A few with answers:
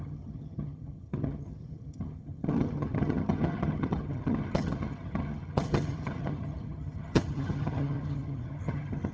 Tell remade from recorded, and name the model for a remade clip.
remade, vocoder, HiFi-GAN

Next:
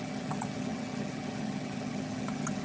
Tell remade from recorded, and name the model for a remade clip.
remade, vocoder, HiFi-GAN